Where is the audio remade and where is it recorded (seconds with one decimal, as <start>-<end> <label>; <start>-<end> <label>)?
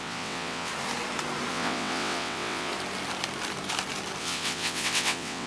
0.0-0.7 remade; 0.7-1.5 recorded; 1.5-2.7 remade; 2.7-4.2 recorded; 4.2-5.5 remade